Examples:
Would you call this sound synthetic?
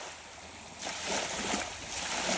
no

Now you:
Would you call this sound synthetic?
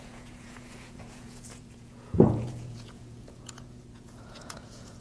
yes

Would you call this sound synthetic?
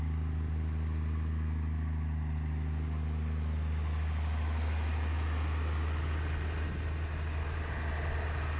no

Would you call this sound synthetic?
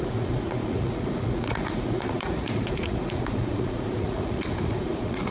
yes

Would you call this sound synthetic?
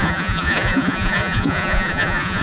yes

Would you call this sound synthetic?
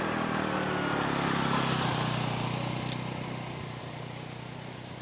no